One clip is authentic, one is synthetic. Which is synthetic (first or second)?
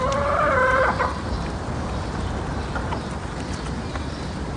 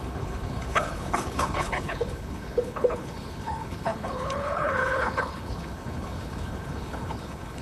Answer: second